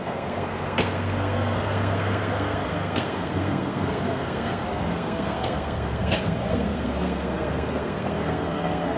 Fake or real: fake